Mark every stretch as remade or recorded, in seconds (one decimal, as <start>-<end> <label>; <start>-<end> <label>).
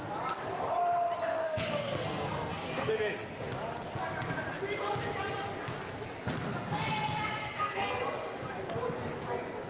0.0-1.4 recorded; 1.4-2.9 remade; 2.9-7.4 recorded; 7.4-8.0 remade; 8.0-9.7 recorded